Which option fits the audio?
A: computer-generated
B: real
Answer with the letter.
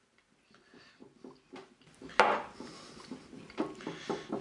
B